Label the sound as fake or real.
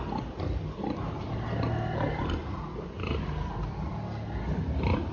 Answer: real